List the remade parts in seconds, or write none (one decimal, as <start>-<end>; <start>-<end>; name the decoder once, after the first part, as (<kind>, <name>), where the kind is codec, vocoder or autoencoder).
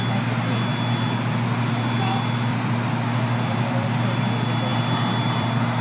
2.5-4.0 (vocoder, BigVGAN v2); 4.7-5.8